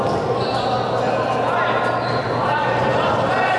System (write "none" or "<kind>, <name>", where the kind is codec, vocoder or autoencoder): none